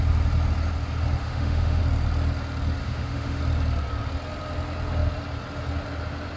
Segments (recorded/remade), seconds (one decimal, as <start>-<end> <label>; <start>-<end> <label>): 0.0-1.2 recorded; 1.2-1.8 remade; 1.8-2.8 recorded; 2.8-3.4 remade; 3.4-6.4 recorded